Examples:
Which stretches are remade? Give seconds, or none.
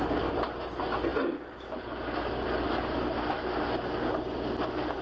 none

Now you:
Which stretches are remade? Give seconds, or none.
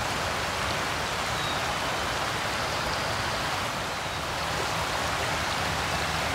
none